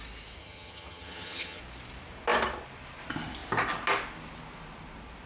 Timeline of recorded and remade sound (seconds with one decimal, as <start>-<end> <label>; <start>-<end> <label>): 0.0-0.4 recorded; 0.4-1.6 remade; 1.6-5.3 recorded